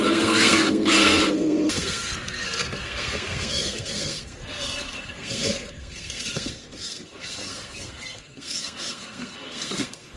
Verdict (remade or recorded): remade